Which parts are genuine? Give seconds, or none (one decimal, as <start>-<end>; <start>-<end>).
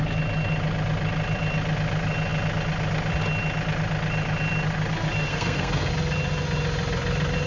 0.0-5.3; 5.9-7.5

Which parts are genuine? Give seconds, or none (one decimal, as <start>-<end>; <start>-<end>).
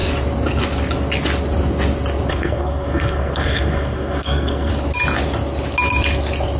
0.0-2.3; 4.7-6.6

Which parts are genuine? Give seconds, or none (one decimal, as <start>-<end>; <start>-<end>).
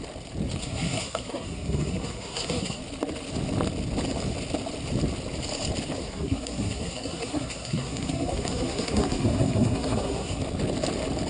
0.0-0.6; 2.8-6.0; 10.4-11.3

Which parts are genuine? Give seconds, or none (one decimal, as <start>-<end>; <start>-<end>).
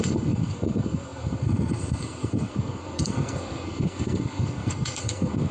none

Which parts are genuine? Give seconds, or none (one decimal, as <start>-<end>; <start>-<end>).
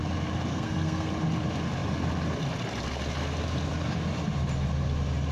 0.0-0.5; 1.1-5.3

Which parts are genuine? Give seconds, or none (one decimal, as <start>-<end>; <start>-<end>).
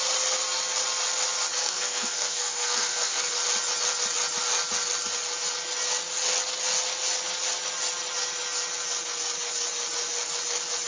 0.0-1.6; 3.3-10.9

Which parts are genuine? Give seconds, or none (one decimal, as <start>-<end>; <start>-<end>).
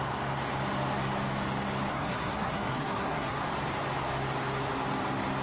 0.0-1.9; 3.4-5.4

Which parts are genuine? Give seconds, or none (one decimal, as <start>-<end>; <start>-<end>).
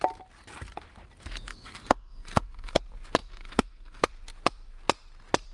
0.0-1.5; 2.8-3.2; 4.1-5.5